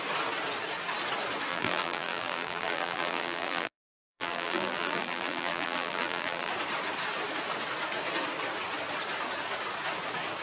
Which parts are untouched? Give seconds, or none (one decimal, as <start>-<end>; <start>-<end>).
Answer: 0.0-1.5; 6.5-10.4